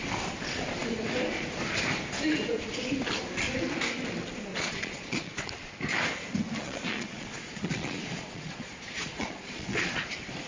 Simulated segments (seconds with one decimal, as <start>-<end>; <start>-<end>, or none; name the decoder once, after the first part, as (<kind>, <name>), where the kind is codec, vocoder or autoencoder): 4.5-5.4 (vocoder, Vocos); 6.6-10.1